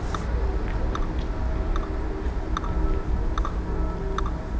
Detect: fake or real real